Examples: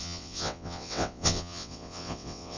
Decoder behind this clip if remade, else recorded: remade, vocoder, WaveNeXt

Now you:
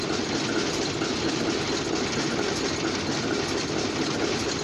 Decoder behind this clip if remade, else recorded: recorded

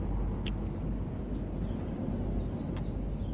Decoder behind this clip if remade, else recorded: recorded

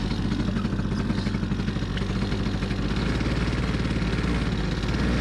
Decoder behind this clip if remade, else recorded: recorded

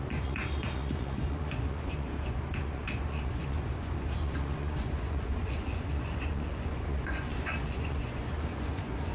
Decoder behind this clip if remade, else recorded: remade, vocoder, Vocos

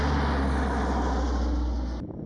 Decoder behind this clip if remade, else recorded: recorded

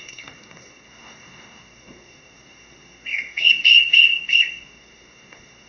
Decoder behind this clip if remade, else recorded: remade, codec, SNAC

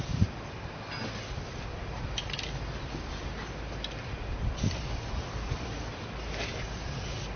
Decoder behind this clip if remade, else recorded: remade, vocoder, BigVGAN v2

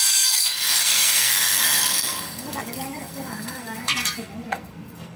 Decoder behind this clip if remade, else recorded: remade, codec, SNAC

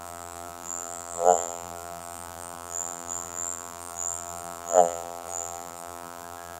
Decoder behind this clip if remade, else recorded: remade, vocoder, BigVGAN v2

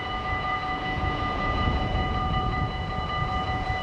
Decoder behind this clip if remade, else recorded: remade, vocoder, Vocos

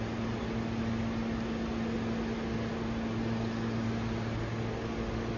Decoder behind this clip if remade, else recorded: recorded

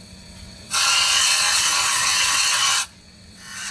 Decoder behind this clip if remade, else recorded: remade, vocoder, WaveNeXt